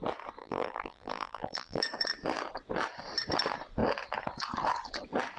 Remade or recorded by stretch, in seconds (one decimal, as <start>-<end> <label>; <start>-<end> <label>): 0.0-0.4 recorded; 0.4-1.8 remade; 1.8-5.4 recorded